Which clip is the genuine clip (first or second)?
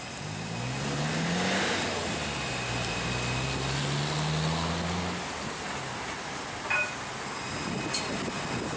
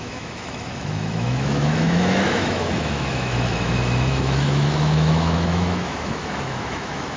first